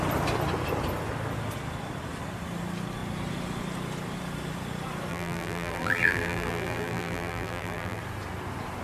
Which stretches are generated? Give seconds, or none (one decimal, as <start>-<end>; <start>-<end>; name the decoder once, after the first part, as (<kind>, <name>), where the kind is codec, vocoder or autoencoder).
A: 5.1-8.0 (vocoder, BigVGAN v2)